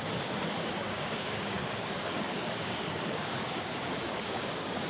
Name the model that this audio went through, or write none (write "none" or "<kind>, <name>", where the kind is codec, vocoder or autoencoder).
codec, DAC